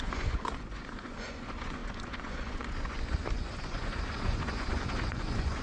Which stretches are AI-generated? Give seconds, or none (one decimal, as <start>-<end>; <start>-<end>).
0.0-5.6